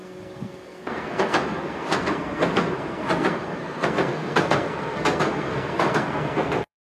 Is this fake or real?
fake